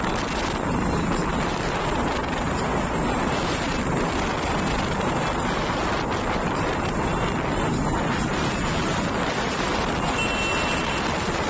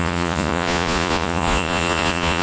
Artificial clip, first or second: second